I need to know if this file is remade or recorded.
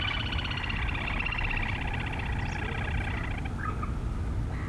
recorded